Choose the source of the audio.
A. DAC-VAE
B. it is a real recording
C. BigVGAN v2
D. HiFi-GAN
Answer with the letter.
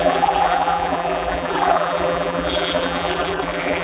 C